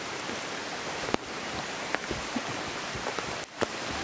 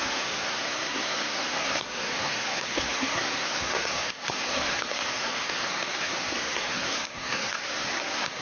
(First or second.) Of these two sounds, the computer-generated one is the second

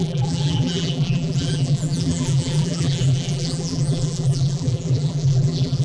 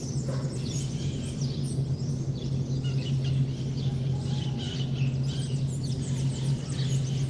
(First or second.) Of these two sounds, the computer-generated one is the first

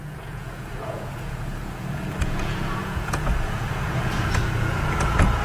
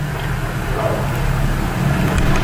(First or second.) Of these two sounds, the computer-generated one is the first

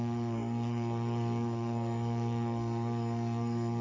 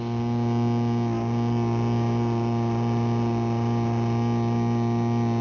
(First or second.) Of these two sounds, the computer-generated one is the first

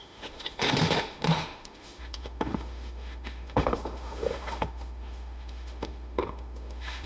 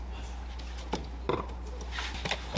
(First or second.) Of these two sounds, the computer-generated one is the first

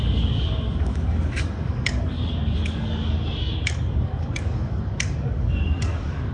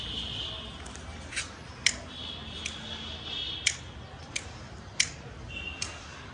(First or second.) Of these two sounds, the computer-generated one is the first